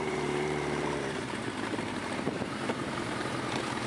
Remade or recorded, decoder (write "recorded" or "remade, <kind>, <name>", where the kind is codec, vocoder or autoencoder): remade, vocoder, BigVGAN v2